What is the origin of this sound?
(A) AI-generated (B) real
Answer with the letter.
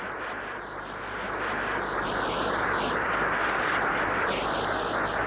B